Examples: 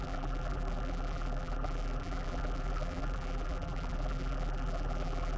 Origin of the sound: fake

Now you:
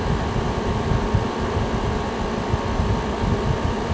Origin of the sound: real